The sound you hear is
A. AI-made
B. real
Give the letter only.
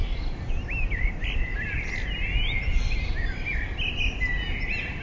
B